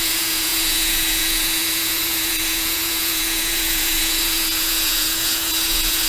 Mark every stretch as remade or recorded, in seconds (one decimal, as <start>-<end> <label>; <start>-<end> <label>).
0.0-6.1 remade